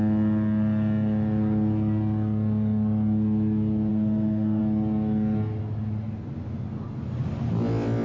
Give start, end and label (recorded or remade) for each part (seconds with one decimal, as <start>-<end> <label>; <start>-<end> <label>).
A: 0.0-3.9 recorded; 3.9-4.6 remade; 4.6-8.0 recorded